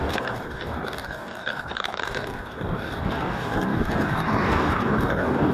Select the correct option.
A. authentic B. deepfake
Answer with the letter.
B